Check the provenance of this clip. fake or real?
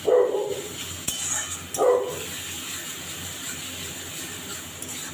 real